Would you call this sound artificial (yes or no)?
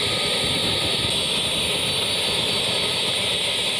no